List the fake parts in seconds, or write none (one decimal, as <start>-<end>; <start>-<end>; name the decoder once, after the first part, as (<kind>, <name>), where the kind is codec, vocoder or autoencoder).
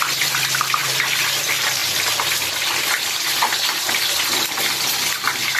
none